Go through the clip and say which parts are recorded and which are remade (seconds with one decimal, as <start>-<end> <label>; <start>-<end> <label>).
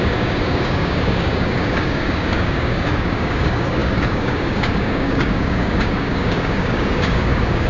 0.0-7.7 remade